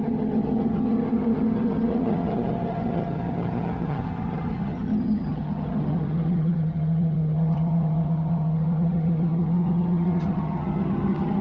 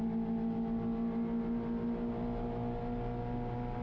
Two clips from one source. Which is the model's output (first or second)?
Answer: first